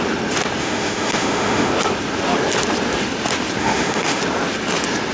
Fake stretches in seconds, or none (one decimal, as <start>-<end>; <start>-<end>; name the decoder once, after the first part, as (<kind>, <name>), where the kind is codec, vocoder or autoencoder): 0.6-1.7 (autoencoder, DAC-VAE); 3.6-4.2